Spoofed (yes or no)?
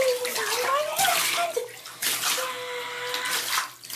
no